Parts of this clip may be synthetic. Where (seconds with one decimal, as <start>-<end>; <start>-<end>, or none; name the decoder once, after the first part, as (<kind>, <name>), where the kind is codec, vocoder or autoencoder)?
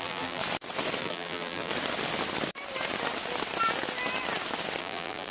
0.0-0.4 (vocoder, BigVGAN v2); 1.0-1.7; 4.8-5.3